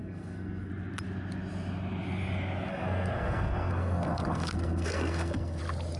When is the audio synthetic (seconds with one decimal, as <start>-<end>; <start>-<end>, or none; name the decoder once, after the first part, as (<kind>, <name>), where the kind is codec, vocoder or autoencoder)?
0.0-0.7 (codec, SNAC); 2.7-5.6